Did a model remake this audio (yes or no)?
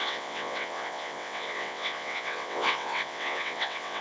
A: yes